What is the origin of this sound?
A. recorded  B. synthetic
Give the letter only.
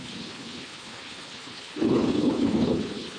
B